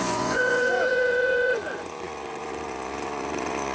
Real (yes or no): no